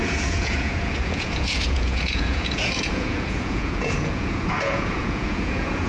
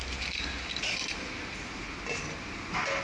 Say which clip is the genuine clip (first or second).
second